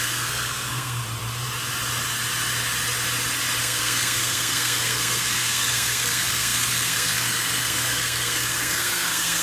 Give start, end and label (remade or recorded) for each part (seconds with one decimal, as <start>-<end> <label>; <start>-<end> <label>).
0.0-1.0 remade; 1.0-3.6 recorded; 3.6-9.4 remade